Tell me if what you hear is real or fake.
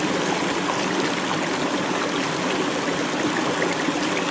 real